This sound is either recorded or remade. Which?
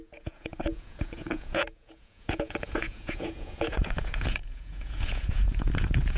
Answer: remade